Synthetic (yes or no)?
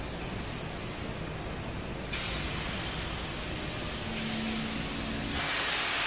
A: no